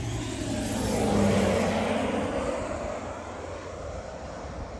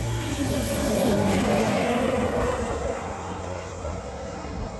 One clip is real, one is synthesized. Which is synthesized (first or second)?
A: second